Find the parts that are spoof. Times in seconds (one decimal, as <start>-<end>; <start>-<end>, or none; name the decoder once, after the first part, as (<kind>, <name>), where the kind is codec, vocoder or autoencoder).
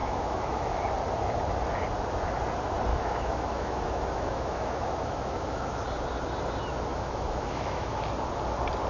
0.0-0.8 (autoencoder, DAC-VAE); 2.9-5.8; 6.9-8.0